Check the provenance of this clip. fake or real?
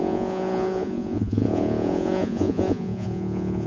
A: fake